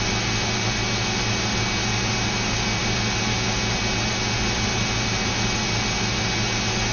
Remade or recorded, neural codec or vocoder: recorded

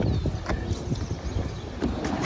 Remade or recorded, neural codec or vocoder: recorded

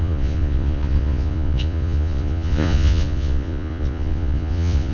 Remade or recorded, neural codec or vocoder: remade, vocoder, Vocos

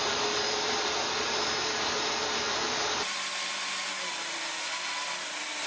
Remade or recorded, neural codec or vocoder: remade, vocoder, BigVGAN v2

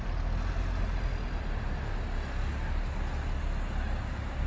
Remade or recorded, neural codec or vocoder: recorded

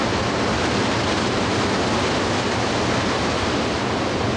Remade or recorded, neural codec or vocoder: recorded